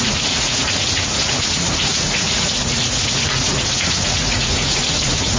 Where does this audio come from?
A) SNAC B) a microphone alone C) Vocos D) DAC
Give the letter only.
C